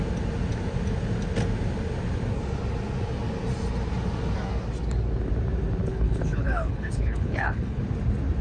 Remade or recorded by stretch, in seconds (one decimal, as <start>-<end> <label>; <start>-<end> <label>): 0.0-5.8 recorded; 5.8-7.8 remade; 7.8-8.4 recorded